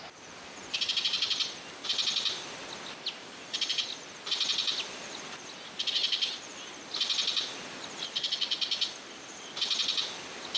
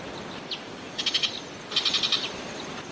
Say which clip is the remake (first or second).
second